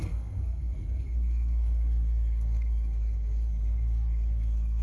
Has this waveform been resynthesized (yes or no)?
yes